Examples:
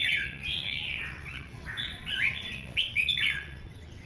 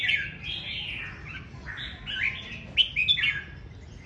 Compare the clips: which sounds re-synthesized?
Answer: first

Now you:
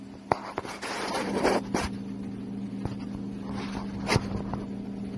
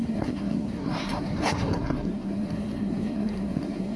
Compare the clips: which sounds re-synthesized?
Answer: second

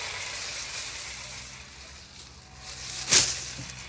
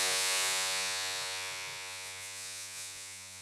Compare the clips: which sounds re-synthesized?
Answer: second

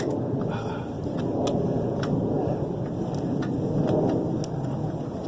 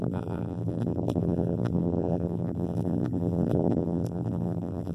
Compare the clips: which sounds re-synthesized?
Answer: second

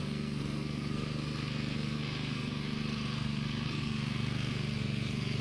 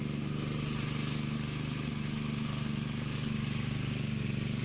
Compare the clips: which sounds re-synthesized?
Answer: first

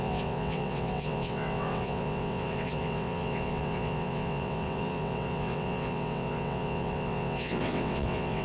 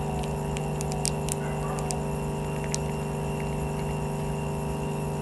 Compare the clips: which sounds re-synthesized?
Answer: first